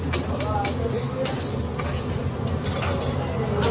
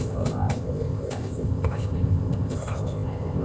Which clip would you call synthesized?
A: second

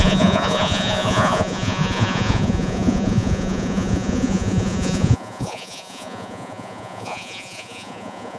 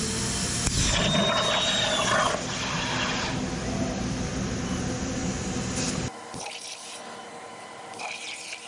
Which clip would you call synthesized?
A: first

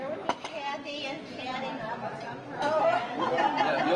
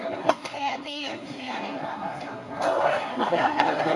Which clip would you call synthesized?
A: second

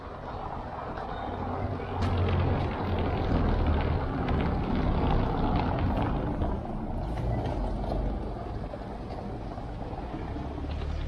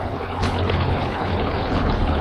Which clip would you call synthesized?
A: second